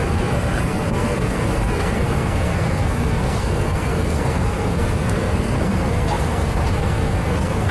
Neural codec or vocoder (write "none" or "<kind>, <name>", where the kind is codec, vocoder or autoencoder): codec, SNAC